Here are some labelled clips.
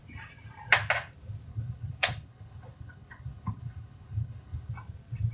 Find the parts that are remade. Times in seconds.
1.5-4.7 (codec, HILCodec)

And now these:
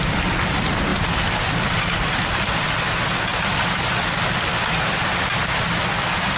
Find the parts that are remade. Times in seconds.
none

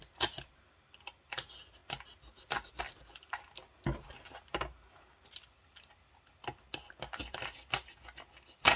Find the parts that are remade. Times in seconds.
none

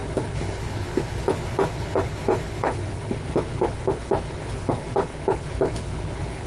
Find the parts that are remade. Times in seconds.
0.0-6.5 (codec, HILCodec)